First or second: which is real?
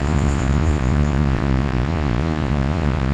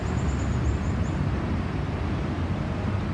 second